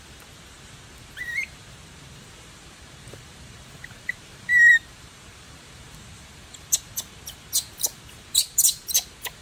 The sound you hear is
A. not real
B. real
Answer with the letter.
A